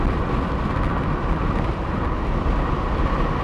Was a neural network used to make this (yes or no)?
yes